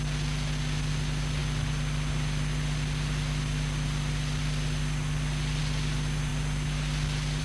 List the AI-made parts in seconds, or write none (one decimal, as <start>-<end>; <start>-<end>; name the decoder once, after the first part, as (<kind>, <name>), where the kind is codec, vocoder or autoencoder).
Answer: none